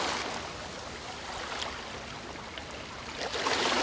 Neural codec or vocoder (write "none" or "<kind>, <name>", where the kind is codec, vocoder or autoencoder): none